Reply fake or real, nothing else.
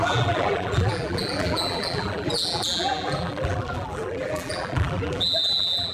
fake